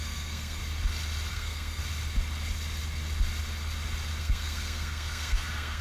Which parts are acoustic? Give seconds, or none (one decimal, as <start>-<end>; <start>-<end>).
0.6-1.3; 1.8-4.2